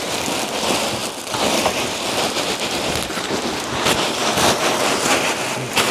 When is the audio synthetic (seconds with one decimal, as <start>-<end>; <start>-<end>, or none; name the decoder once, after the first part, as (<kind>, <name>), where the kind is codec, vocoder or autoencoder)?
0.0-1.0 (vocoder, BigVGAN v2); 1.9-5.9